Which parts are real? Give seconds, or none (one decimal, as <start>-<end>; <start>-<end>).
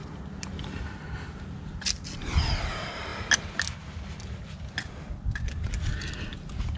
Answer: 0.0-6.8